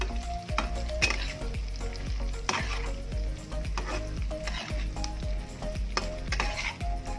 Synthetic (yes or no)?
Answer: no